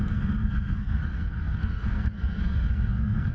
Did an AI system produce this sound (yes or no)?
yes